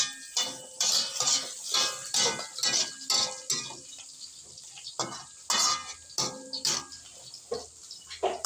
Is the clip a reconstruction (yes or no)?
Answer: no